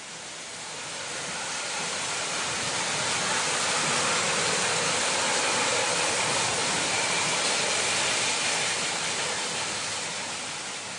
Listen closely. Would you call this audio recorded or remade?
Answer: recorded